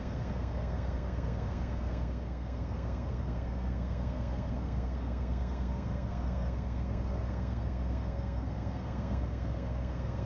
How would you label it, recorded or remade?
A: remade